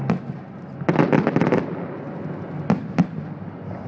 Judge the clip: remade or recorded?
recorded